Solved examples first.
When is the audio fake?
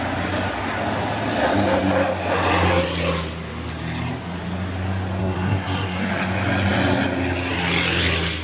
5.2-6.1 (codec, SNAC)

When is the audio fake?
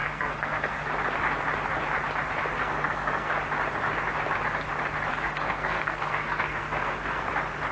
0.0-0.9 (codec, SNAC); 2.6-3.3; 5.1-7.3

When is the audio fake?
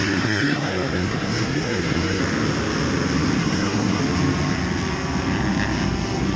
0.0-2.2 (codec, SNAC); 3.4-4.0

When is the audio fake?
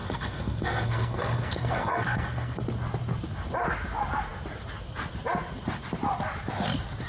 0.0-2.6 (codec, SNAC)